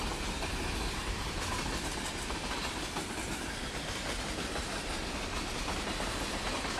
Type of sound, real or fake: real